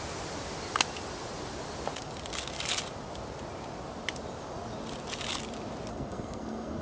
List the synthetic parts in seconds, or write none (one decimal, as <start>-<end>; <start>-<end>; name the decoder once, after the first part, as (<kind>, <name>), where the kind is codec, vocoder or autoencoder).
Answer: 5.9-6.8 (codec, SNAC)